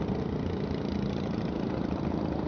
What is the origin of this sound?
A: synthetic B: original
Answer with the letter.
B